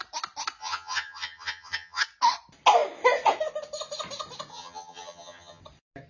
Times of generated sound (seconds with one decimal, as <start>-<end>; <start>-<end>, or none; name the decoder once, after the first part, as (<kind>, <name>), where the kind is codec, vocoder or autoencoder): 0.6-2.0 (vocoder, HiFi-GAN); 4.5-5.6